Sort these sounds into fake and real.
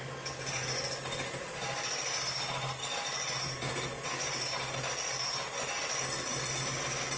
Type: real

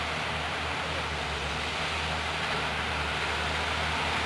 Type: real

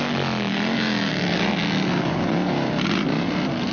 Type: real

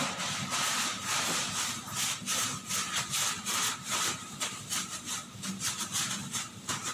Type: fake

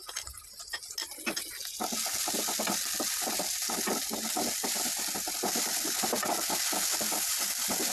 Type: real